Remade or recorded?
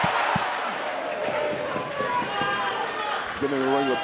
recorded